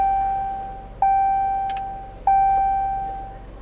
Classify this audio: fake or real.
real